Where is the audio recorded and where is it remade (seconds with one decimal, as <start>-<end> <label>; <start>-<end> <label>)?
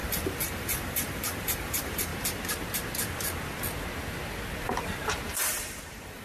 0.0-2.1 remade; 2.1-5.3 recorded; 5.3-6.2 remade